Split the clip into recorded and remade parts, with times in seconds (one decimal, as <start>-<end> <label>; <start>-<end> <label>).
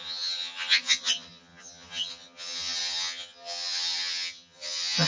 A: 0.0-5.1 remade